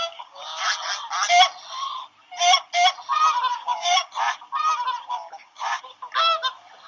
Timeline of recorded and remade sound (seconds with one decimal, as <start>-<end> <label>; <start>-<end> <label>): 0.0-0.6 remade; 0.6-3.5 recorded; 3.5-4.1 remade; 4.1-5.1 recorded; 5.1-5.8 remade; 5.8-6.9 recorded